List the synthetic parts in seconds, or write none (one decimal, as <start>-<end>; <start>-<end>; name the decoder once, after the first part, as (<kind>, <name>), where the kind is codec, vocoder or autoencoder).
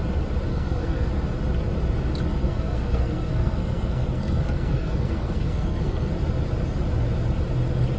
0.5-1.1 (codec, SNAC); 2.4-6.1